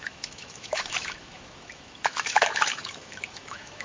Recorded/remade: remade